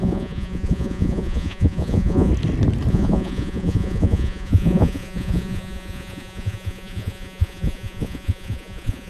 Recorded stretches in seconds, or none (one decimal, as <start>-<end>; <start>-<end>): 2.3-2.9